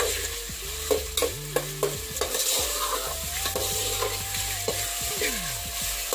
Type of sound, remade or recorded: recorded